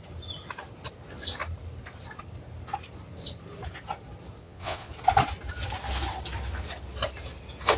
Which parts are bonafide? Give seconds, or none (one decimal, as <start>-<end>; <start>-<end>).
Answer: 0.0-4.4; 4.9-7.8